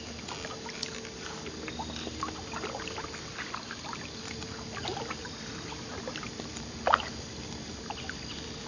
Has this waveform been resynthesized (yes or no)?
no